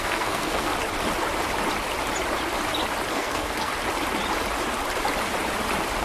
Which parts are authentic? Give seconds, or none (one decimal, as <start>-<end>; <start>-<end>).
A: 0.7-3.1; 3.7-6.0